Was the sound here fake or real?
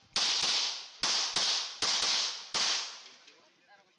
real